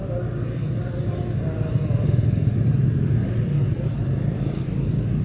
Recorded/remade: recorded